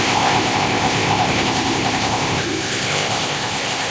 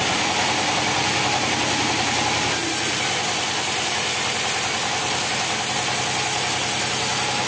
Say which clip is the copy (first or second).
first